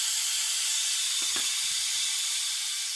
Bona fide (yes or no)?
no